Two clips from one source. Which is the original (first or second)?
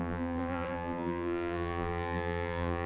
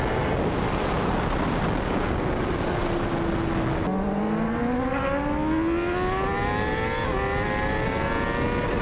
second